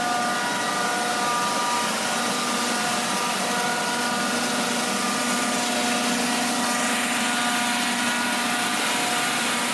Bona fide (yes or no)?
yes